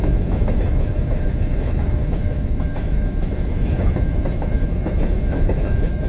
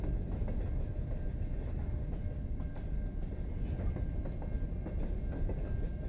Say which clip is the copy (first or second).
first